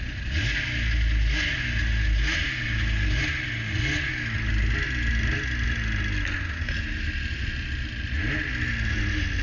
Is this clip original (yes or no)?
yes